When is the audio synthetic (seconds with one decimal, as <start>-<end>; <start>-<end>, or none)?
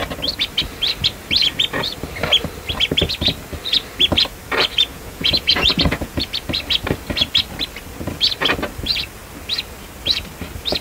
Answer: 4.9-6.3